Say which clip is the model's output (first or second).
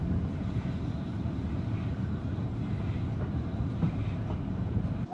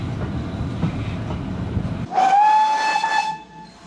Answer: first